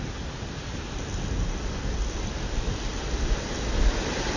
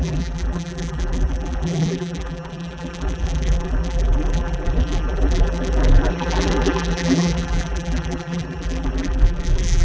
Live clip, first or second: first